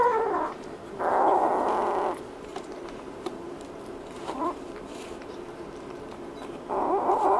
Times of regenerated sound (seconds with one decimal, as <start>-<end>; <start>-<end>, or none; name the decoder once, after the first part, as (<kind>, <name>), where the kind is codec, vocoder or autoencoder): 0.0-1.0 (vocoder, BigVGAN v2); 2.5-5.7